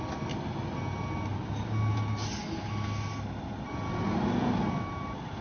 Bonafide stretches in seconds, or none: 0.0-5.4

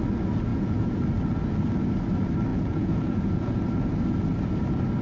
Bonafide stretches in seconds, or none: 0.0-0.5; 1.0-2.5; 3.6-5.0

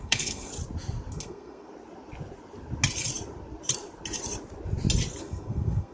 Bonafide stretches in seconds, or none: 0.5-1.1; 1.7-5.2

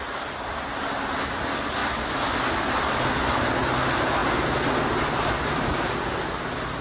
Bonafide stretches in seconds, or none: 0.0-1.8; 2.7-6.8

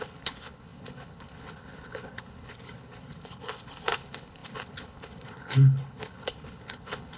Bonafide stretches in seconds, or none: none

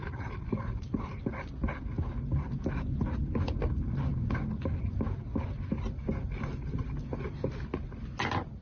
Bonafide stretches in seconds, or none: 1.1-8.6